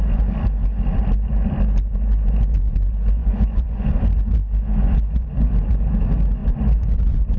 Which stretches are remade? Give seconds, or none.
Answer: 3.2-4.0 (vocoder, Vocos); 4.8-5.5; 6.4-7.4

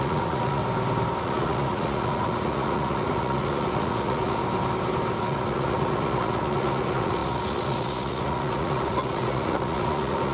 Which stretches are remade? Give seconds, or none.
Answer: 0.0-0.6 (vocoder, Vocos); 1.2-4.4; 5.2-10.3

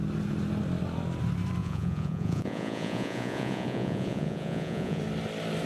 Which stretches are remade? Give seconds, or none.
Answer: 1.6-5.0 (vocoder, Vocos)

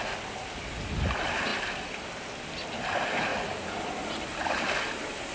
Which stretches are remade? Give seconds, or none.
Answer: none

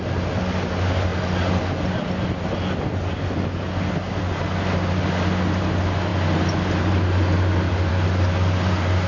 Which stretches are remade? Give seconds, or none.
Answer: none

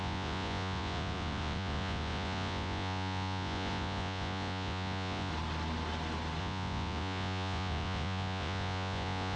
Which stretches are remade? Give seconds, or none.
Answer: 0.0-5.3 (vocoder, Vocos); 6.4-9.4

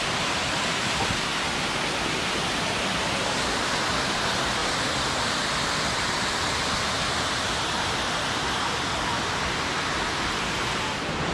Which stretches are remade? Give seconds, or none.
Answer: none

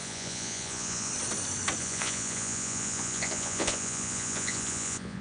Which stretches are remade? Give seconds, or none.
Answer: 0.0-1.1 (vocoder, Vocos); 1.8-5.2